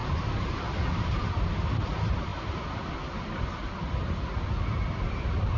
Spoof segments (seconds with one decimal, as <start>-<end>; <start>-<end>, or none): 0.0-1.5